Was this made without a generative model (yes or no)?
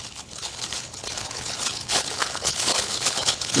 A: no